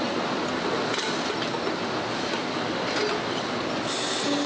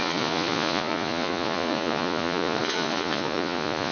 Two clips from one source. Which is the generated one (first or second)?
second